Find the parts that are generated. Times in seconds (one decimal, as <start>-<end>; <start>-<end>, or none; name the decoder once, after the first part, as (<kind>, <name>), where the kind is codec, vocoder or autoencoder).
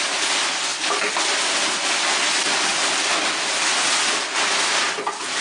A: 0.7-1.9 (vocoder, BigVGAN v2); 2.7-3.6